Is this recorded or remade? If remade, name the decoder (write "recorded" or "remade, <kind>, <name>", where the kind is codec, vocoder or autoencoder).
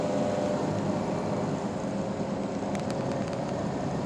recorded